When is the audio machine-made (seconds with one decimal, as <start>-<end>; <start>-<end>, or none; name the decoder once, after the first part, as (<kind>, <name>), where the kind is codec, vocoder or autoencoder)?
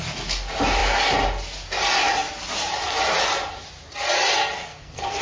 4.7-5.2 (codec, SNAC)